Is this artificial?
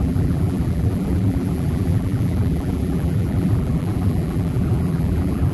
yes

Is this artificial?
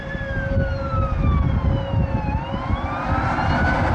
no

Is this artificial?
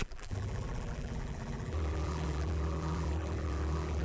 yes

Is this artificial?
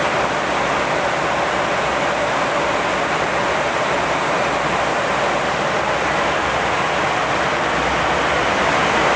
no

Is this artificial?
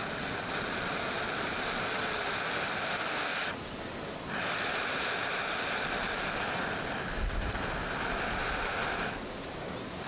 no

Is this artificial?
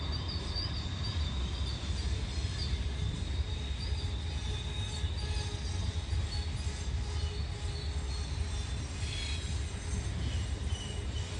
no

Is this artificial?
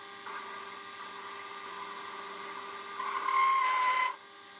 no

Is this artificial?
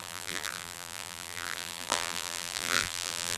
yes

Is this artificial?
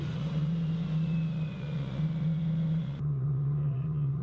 yes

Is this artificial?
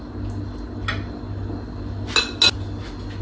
no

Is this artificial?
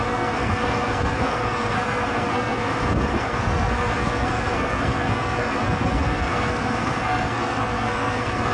yes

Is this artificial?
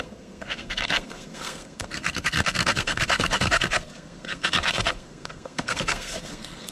yes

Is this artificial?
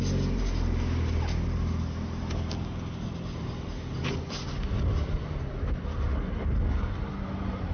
no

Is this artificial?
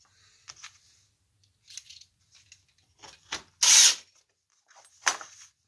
no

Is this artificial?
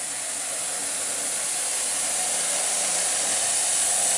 no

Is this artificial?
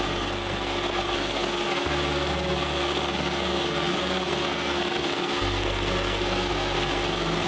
yes